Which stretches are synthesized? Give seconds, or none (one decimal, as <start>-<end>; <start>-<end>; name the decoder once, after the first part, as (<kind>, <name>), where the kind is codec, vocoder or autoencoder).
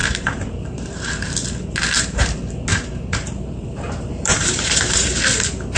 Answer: 0.0-1.3 (vocoder, BigVGAN v2); 2.7-5.2